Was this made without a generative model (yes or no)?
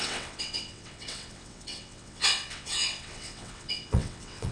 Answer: no